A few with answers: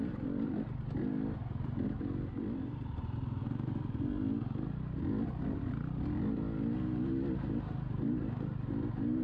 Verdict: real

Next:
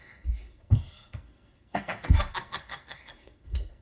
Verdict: fake